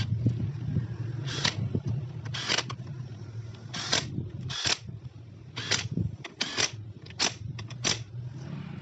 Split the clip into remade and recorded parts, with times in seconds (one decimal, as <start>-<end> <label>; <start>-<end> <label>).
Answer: 0.0-8.8 recorded